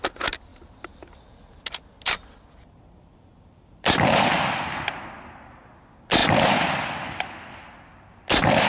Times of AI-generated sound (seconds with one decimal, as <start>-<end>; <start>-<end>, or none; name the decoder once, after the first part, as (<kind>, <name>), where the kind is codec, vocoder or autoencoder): none